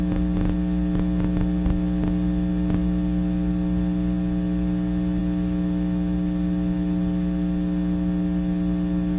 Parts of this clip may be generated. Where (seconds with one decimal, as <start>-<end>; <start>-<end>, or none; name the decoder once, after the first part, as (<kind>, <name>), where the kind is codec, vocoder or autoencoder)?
none